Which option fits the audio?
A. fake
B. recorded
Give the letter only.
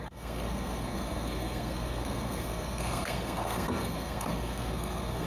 A